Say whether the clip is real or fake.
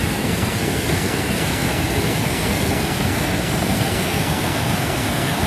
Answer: fake